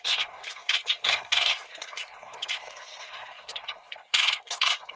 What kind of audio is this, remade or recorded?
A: remade